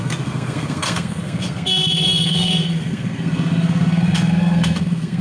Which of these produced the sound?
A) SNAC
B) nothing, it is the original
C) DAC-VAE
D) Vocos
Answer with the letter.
A